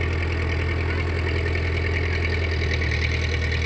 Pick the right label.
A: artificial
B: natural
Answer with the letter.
B